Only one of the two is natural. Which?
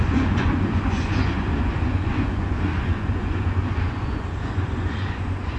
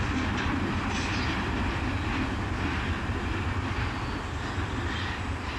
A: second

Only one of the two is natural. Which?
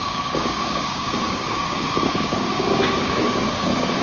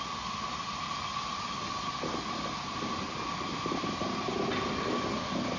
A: second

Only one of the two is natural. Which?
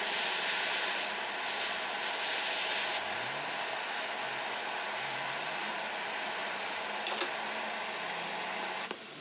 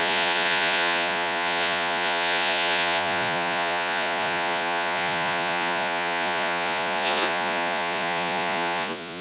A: first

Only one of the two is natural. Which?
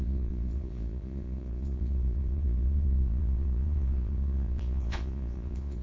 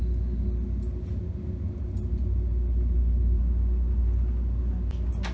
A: second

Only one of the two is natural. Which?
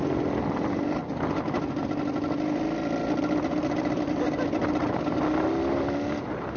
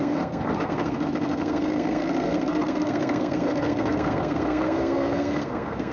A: first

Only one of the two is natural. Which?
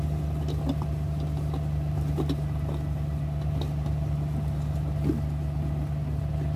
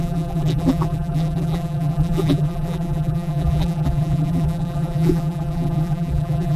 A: first